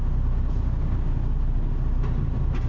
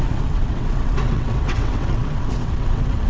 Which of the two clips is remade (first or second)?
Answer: second